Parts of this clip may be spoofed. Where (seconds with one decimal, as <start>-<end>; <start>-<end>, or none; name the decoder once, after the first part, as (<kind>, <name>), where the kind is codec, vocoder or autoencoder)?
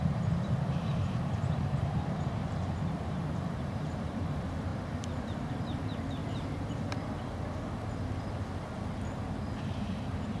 0.0-4.7 (vocoder, BigVGAN v2); 5.5-6.2; 9.0-10.4